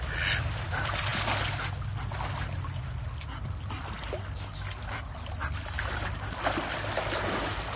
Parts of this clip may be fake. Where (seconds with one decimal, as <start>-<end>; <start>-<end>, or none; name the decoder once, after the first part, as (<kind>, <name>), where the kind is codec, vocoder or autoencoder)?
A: none